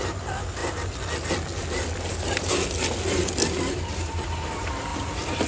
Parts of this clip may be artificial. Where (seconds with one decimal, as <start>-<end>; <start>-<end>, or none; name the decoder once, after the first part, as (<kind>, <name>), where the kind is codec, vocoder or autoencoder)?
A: none